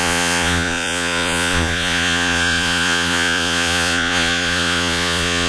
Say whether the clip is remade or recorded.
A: remade